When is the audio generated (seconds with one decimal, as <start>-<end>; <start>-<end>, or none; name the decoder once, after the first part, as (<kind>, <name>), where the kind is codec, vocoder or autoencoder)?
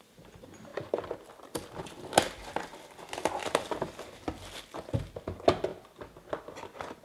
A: none